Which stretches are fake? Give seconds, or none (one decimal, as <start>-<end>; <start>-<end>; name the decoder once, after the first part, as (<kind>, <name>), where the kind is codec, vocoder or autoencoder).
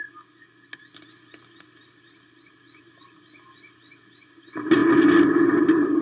none